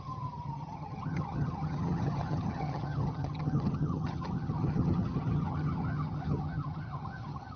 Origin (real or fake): fake